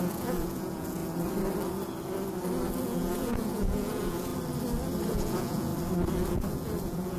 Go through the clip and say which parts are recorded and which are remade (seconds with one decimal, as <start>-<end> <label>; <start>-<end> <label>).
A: 0.0-1.0 remade; 1.0-2.8 recorded; 2.8-4.3 remade; 4.3-5.1 recorded; 5.1-5.7 remade; 5.7-6.3 recorded; 6.3-7.2 remade